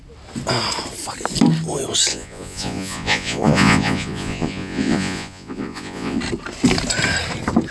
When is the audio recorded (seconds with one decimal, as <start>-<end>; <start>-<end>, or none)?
0.0-2.1; 6.2-7.7